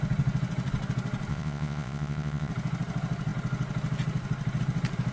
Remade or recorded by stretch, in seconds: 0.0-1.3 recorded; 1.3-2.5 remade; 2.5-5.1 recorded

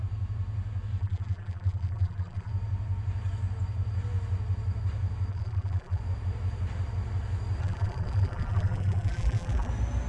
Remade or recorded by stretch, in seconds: 0.0-1.0 recorded; 1.0-2.5 remade; 2.5-5.3 recorded; 5.3-6.0 remade; 6.0-7.6 recorded; 7.6-9.7 remade; 9.7-10.1 recorded

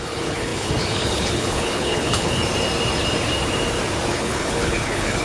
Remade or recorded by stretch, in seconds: 0.0-2.4 remade; 2.4-4.1 recorded; 4.1-5.2 remade

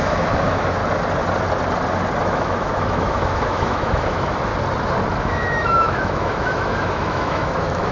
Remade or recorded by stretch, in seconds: 0.0-0.8 remade; 0.8-2.2 recorded; 2.2-4.5 remade; 4.5-5.2 recorded; 5.2-7.9 remade